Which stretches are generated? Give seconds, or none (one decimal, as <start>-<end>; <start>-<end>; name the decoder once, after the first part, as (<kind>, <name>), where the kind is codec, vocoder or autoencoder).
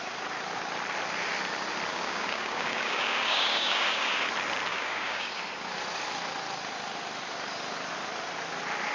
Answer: 1.9-4.3 (codec, DAC); 4.7-5.4